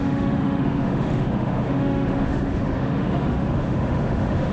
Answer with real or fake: fake